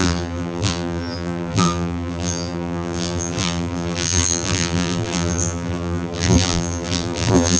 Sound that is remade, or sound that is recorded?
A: remade